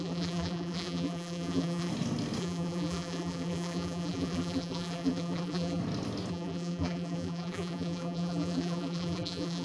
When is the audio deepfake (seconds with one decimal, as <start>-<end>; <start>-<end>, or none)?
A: 0.0-1.9; 2.4-5.8; 6.3-9.6